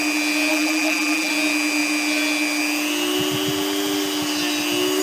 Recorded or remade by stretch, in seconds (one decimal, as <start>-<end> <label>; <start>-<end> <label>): 0.0-0.5 recorded; 0.5-1.3 remade; 1.3-5.0 recorded